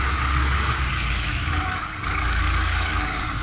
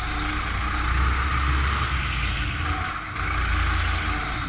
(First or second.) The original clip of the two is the second